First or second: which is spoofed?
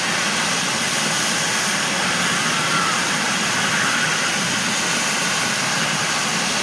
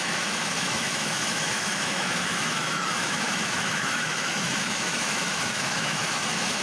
second